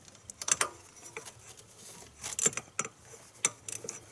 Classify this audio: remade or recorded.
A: recorded